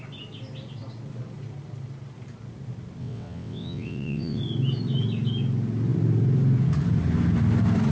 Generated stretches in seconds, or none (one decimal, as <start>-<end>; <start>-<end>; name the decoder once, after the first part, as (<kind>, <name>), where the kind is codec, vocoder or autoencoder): 3.0-4.4 (vocoder, WaveNeXt)